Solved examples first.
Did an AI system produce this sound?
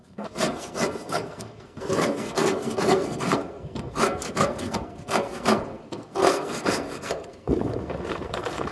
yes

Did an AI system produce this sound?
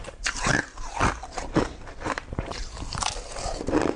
yes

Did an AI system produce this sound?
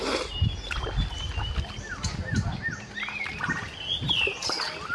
no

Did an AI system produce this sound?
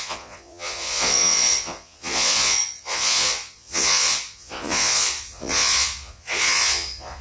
yes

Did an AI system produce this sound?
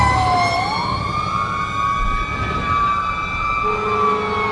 no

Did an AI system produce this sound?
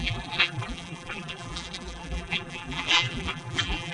yes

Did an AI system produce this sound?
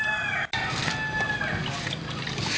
no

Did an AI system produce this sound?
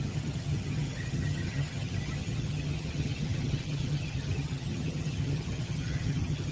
yes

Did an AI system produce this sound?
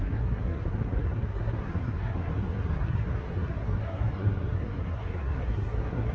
yes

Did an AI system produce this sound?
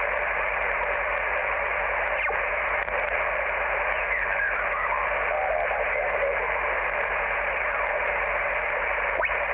yes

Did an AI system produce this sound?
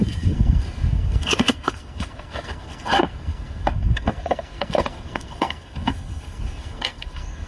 yes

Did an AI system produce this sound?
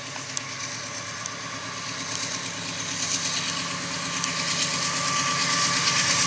no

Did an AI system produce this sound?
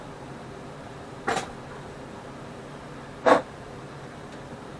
yes